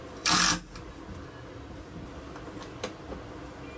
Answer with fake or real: real